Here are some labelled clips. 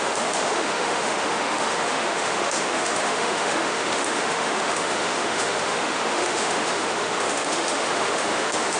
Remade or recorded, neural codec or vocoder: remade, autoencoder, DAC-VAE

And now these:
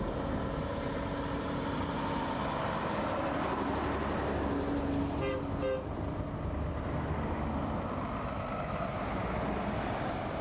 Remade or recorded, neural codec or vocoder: recorded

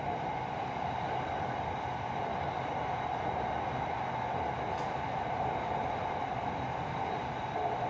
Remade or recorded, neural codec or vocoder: recorded